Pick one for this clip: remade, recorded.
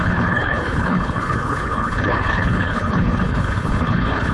remade